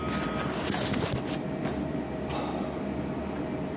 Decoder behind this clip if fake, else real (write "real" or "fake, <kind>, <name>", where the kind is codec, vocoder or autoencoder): real